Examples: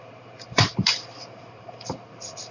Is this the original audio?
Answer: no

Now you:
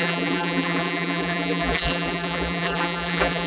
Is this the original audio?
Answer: no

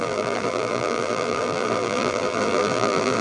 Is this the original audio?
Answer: no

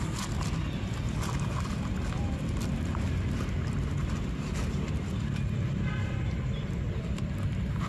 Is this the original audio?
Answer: yes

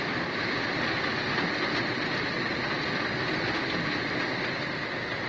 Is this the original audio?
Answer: yes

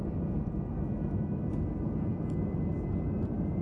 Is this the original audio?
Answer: yes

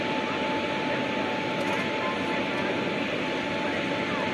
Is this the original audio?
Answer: yes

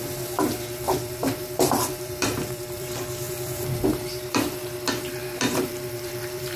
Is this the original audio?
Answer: no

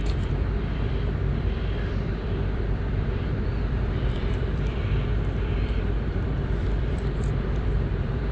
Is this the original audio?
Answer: no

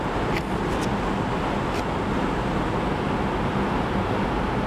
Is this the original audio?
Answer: yes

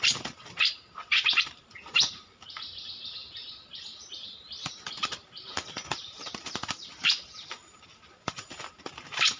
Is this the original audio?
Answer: no